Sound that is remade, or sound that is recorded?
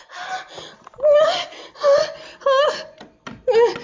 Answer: recorded